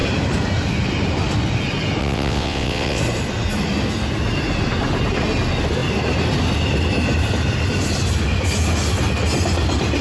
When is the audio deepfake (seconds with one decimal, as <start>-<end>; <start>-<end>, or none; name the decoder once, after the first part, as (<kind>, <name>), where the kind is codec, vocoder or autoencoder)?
2.0-3.0 (vocoder, WaveNeXt)

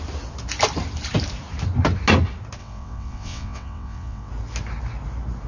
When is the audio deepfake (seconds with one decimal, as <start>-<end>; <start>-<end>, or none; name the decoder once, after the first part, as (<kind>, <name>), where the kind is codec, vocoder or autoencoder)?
2.6-4.3 (vocoder, WaveNeXt)

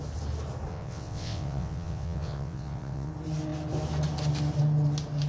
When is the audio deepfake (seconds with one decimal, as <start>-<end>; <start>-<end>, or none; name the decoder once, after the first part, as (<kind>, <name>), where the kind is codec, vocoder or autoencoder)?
0.7-3.1 (vocoder, WaveNeXt)

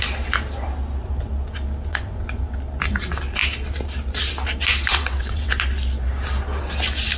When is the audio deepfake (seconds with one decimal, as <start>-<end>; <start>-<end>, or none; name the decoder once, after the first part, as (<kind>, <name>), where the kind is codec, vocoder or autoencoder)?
1.9-2.6 (vocoder, WaveNeXt); 4.9-5.5

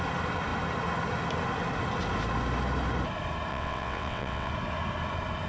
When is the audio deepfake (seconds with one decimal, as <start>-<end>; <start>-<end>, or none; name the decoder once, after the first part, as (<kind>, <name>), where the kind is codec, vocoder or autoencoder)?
3.5-4.5 (vocoder, WaveNeXt)

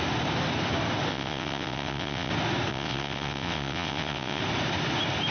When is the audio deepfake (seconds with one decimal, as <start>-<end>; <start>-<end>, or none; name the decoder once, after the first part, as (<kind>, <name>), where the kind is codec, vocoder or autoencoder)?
1.1-2.3 (vocoder, WaveNeXt); 2.7-4.4

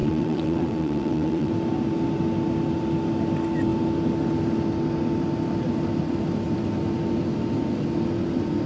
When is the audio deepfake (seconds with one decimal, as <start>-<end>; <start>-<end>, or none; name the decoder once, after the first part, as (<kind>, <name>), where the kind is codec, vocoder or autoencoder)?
0.0-1.5 (vocoder, WaveNeXt)

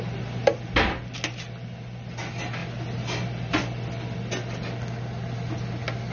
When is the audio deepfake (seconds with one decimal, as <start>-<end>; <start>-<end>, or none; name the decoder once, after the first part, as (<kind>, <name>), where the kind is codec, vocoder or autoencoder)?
none